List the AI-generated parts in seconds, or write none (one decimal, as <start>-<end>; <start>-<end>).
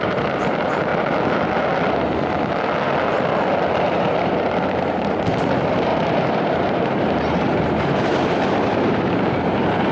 0.0-0.9; 3.8-9.9